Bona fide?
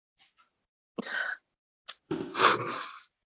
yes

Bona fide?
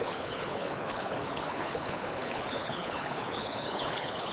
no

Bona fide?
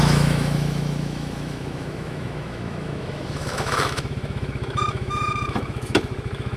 no